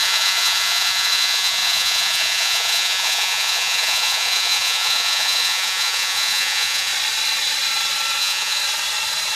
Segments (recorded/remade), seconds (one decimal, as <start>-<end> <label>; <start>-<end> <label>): 0.0-6.9 remade; 6.9-8.2 recorded; 8.2-8.6 remade; 8.6-9.4 recorded